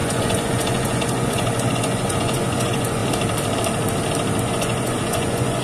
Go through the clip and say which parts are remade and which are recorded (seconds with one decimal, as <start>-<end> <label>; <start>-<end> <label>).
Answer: 0.0-3.0 remade; 3.0-4.4 recorded; 4.4-5.6 remade